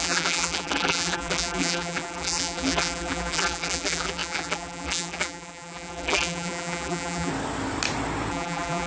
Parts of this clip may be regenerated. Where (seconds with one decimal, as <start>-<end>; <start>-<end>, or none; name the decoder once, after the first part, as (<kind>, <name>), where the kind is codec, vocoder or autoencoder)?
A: 0.0-7.3 (vocoder, BigVGAN v2); 8.3-8.9